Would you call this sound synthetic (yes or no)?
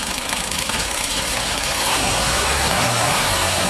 yes